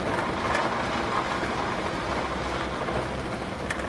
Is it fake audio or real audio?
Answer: real